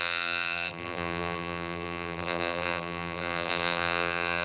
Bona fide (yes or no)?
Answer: no